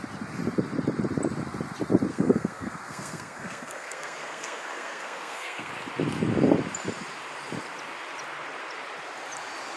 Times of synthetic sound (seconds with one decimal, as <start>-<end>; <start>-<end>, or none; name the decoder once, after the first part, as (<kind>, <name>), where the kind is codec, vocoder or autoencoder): 2.1-5.7 (codec, SNAC)